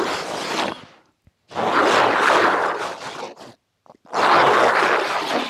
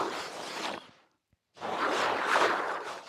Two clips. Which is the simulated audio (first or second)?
second